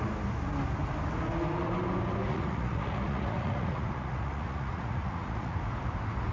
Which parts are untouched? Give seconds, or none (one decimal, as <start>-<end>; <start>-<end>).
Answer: 0.0-2.3; 5.6-6.3